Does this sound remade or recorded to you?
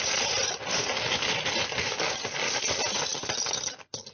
recorded